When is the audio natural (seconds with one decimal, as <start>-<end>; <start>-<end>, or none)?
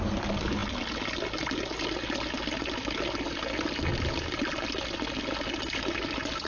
0.0-6.5